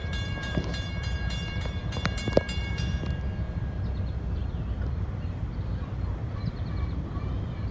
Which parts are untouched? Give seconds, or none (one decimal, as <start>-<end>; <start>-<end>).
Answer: 2.9-4.4; 5.8-6.2